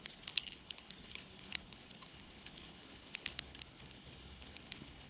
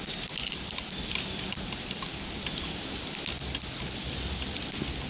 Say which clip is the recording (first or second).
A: second